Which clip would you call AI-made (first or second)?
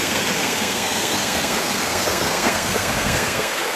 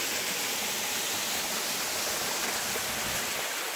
first